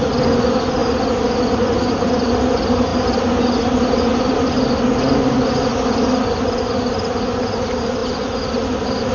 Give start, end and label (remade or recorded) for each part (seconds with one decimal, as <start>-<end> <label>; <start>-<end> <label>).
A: 0.0-9.1 recorded